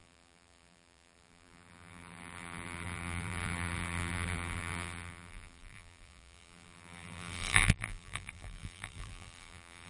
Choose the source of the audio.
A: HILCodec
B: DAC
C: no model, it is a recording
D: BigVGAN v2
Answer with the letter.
D